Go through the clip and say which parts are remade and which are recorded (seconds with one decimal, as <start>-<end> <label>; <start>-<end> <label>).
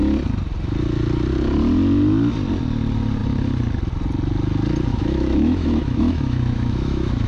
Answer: 0.0-4.9 recorded; 4.9-7.3 remade